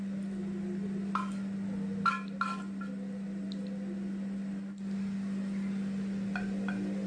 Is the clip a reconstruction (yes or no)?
no